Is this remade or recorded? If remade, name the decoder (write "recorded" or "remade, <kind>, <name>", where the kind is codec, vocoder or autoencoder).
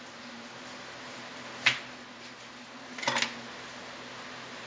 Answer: recorded